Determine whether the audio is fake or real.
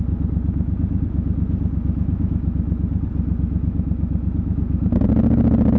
real